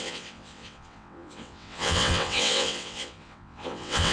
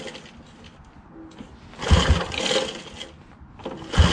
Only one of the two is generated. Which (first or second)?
first